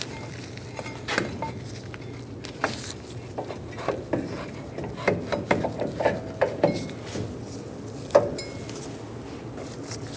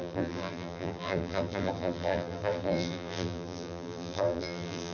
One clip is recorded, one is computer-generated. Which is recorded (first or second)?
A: first